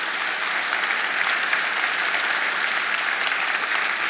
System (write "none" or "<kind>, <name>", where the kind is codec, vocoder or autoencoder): none